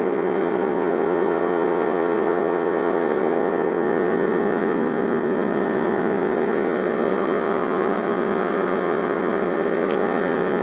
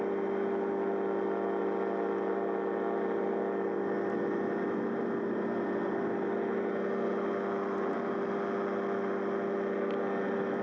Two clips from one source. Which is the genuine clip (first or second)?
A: second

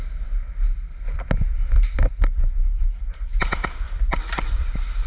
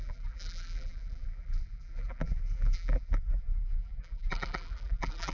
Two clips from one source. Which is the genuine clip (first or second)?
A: first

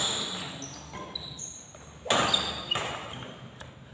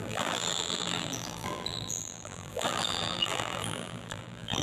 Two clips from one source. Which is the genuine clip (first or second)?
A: first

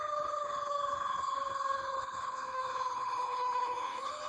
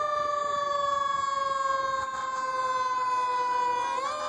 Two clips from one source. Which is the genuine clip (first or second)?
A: second